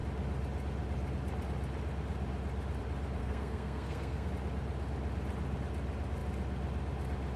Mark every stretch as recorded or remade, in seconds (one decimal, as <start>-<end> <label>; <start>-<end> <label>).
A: 0.0-3.2 recorded; 3.2-4.3 remade; 4.3-7.4 recorded